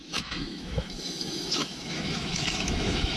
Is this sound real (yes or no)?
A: no